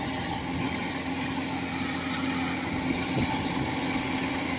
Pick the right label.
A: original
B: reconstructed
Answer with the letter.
A